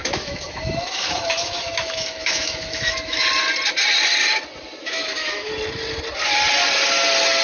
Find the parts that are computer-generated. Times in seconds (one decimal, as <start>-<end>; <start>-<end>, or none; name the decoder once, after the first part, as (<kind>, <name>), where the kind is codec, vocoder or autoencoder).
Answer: 0.0-3.2 (autoencoder, DAC-VAE); 4.8-5.5